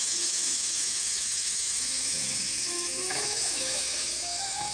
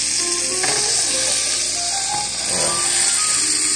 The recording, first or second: second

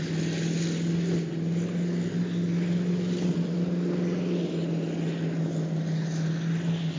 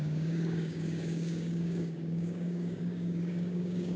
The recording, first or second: first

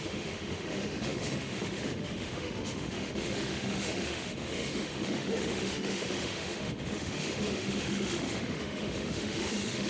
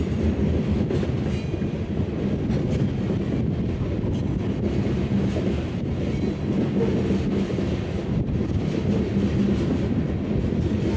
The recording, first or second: second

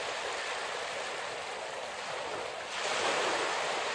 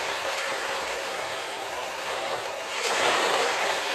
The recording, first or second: first